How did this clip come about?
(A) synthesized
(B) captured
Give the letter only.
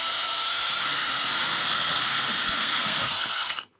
A